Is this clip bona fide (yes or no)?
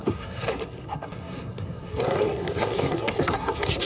no